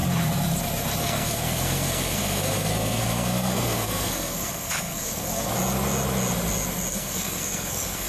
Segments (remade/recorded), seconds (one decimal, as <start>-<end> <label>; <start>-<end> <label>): 0.0-1.0 recorded; 1.0-5.5 remade; 5.5-6.9 recorded; 6.9-8.1 remade